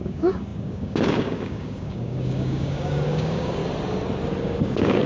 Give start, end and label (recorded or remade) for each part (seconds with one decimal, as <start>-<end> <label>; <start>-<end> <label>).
0.0-3.6 remade; 3.6-4.4 recorded; 4.4-5.1 remade